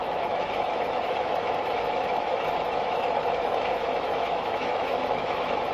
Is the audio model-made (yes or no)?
yes